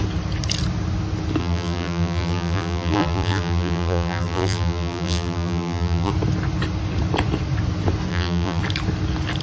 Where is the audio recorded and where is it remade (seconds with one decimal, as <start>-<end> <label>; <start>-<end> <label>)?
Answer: 0.0-1.4 recorded; 1.4-6.1 remade; 6.1-8.1 recorded; 8.1-8.6 remade; 8.6-9.4 recorded